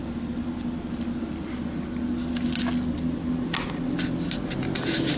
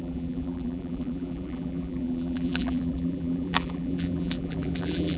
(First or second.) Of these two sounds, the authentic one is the first